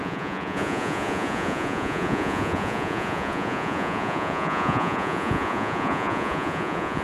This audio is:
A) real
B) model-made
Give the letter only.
B